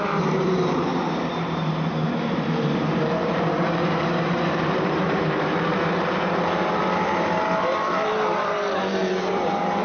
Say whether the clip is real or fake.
fake